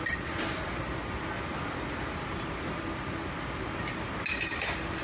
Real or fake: real